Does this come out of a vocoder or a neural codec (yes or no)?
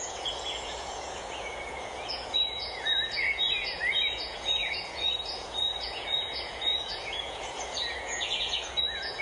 yes